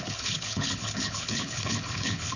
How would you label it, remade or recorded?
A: remade